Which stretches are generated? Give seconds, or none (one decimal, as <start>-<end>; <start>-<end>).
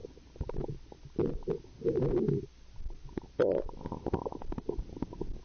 none